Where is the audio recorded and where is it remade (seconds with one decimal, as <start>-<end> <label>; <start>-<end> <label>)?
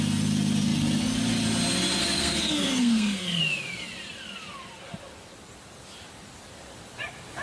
0.0-2.0 recorded; 2.0-3.4 remade; 3.4-7.4 recorded